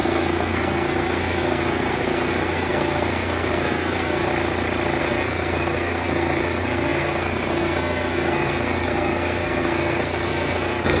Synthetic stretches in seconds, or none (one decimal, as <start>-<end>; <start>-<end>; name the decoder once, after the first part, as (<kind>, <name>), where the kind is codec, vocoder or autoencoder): 0.0-4.3 (codec, SNAC); 5.0-11.0